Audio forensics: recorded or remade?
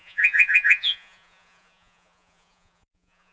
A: remade